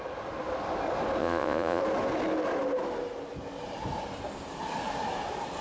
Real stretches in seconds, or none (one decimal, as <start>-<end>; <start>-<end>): 0.0-1.2; 1.8-5.6